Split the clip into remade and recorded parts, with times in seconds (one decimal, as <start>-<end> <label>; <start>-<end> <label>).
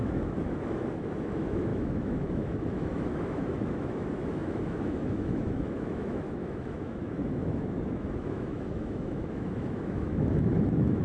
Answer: 0.0-11.0 remade